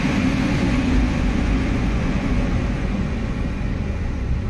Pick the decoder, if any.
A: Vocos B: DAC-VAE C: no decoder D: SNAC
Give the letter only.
A